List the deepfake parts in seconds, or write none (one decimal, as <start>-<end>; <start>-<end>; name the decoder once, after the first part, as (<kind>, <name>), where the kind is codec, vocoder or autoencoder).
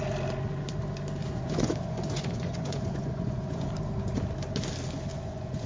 1.2-3.7 (vocoder, Vocos); 5.1-5.7